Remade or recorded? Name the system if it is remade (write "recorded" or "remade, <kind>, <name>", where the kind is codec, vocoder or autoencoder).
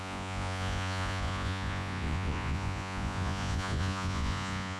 remade, vocoder, Vocos